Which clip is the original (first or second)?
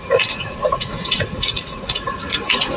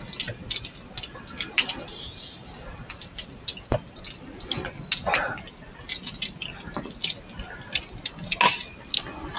second